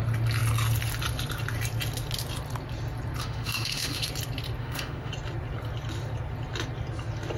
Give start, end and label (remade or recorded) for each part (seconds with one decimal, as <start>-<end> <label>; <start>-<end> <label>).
0.0-3.2 recorded; 3.2-4.1 remade; 4.1-4.6 recorded; 4.6-5.1 remade; 5.1-7.4 recorded